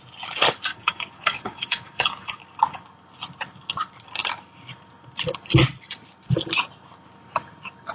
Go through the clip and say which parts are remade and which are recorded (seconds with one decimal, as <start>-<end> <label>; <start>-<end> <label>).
0.0-0.7 recorded; 0.7-2.4 remade; 2.4-7.9 recorded

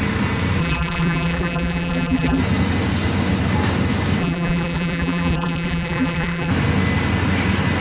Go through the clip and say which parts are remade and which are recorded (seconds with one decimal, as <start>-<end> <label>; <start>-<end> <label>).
0.0-0.6 recorded; 0.6-2.4 remade; 2.4-4.2 recorded; 4.2-6.5 remade; 6.5-7.8 recorded

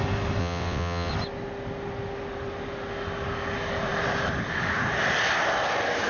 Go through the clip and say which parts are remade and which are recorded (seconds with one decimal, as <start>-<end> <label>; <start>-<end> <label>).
0.0-0.4 recorded; 0.4-1.1 remade; 1.1-6.1 recorded